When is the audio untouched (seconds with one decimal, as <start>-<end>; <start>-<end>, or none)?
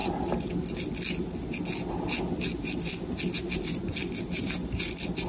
0.0-5.3